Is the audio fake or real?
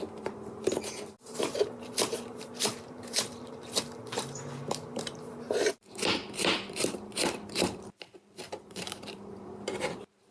fake